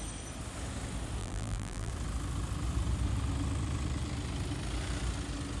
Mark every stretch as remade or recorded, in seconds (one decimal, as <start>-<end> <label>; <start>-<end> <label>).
0.0-1.2 recorded; 1.2-1.9 remade; 1.9-5.6 recorded